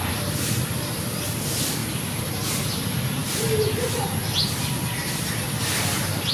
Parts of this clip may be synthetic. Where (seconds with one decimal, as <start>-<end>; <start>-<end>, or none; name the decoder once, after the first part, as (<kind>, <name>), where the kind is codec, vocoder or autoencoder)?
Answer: none